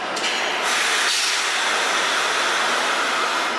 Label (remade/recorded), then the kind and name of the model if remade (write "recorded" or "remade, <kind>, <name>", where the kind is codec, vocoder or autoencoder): recorded